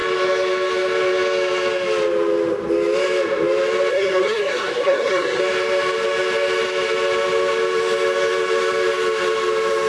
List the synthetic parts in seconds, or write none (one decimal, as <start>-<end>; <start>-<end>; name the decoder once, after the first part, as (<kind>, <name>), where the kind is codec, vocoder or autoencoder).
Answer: 3.9-5.4 (codec, SNAC)